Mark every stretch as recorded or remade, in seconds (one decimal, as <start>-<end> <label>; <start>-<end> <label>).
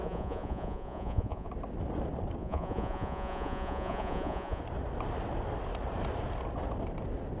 0.0-1.5 remade; 1.5-2.4 recorded; 2.4-4.6 remade; 4.6-7.4 recorded